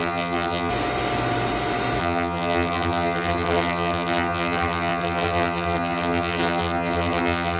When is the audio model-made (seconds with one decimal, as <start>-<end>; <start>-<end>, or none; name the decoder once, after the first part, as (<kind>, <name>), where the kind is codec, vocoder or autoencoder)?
0.0-0.7 (vocoder, HiFi-GAN); 2.0-7.6